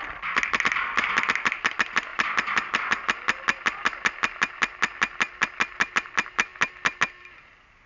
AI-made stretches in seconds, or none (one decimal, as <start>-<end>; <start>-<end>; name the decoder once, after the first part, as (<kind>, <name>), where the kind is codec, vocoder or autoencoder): none